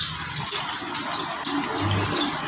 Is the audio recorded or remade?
recorded